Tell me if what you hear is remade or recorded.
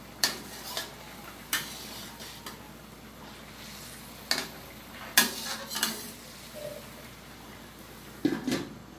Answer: recorded